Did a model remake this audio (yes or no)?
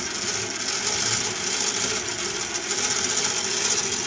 no